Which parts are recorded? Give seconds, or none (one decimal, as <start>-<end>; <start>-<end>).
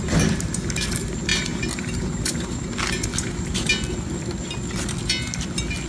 0.0-1.3; 3.7-5.9